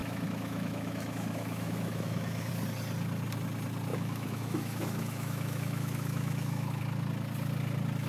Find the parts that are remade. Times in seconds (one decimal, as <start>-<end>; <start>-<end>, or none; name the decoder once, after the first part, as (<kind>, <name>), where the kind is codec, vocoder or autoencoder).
0.0-2.5 (autoencoder, DAC-VAE); 3.9-6.8